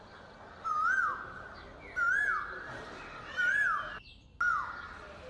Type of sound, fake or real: real